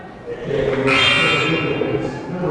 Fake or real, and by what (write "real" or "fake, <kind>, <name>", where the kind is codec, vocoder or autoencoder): real